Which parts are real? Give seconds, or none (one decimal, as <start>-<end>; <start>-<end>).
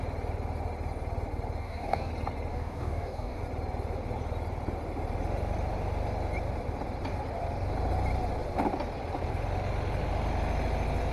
0.0-1.6; 2.1-2.5; 3.4-11.1